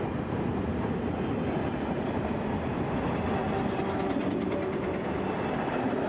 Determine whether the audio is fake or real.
real